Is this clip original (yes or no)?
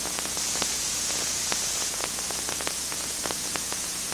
no